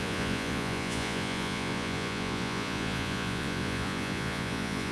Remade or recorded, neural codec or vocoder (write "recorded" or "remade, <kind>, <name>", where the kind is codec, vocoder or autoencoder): remade, vocoder, Vocos